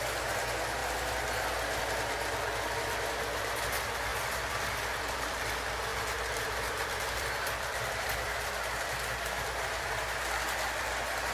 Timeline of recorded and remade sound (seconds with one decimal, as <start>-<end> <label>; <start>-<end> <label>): 0.0-4.1 recorded; 4.1-5.4 remade; 5.4-5.9 recorded; 5.9-9.9 remade; 9.9-11.3 recorded